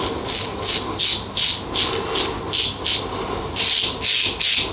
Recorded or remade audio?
recorded